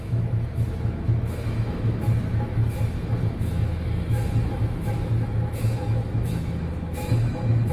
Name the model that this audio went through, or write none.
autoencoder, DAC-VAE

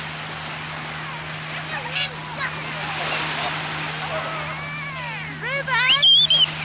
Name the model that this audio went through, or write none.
none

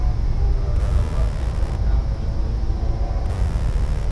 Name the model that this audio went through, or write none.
none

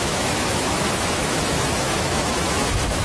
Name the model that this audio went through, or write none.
autoencoder, DAC-VAE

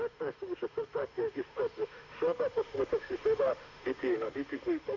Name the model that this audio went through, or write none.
autoencoder, DAC-VAE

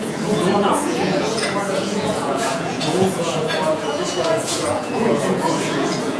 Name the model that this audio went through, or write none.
vocoder, Vocos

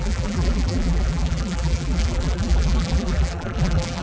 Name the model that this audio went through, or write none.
vocoder, BigVGAN v2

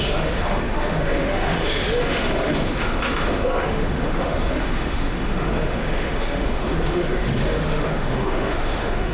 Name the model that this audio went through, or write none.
autoencoder, DAC-VAE